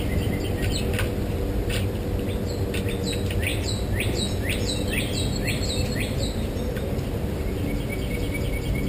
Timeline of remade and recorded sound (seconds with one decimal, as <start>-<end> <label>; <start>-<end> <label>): 0.0-8.9 recorded